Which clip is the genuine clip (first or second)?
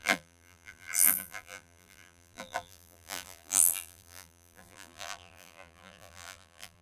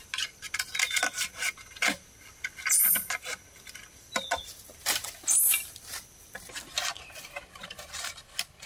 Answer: second